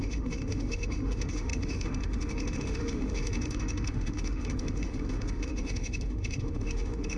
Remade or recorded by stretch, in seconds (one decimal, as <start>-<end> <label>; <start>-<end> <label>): 0.0-7.2 remade

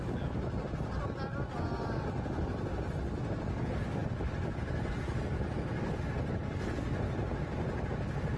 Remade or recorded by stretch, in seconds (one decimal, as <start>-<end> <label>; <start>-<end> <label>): 0.0-8.4 recorded

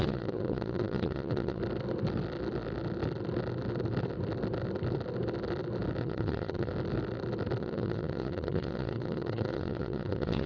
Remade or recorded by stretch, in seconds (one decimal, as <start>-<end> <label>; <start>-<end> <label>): 0.0-1.6 remade; 1.6-6.0 recorded; 6.0-6.7 remade; 6.7-7.6 recorded; 7.6-10.5 remade

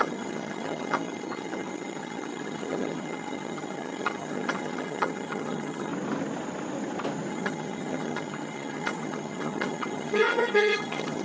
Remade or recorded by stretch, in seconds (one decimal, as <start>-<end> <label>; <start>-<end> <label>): 0.0-5.9 remade; 5.9-7.3 recorded; 7.3-11.2 remade